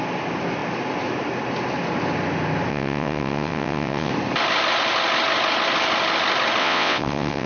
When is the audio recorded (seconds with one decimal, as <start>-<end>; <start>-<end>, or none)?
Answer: 0.0-2.7; 4.1-6.6